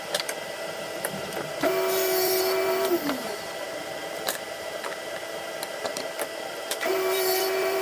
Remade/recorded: remade